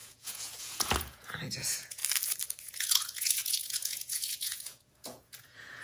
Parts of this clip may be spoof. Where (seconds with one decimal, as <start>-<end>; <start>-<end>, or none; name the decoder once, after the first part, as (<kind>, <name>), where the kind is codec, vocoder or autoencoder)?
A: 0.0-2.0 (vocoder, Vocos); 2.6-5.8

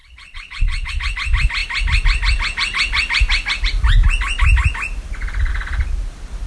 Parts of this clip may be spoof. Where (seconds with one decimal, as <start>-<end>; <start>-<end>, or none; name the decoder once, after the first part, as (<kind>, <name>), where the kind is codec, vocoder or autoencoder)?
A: 0.0-0.9 (vocoder, Vocos)

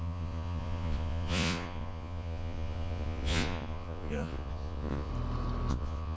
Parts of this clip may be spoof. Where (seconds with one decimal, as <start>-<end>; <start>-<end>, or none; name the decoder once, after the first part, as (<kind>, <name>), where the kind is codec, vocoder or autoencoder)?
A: 0.0-5.1 (vocoder, Vocos); 5.7-6.2